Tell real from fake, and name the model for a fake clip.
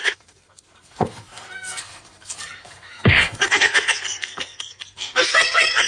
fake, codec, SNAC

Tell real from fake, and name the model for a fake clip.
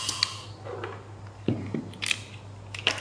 real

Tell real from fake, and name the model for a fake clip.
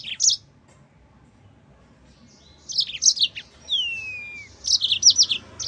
real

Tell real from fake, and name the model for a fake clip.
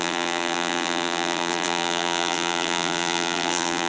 fake, vocoder, BigVGAN v2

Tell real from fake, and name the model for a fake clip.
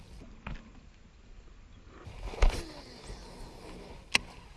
real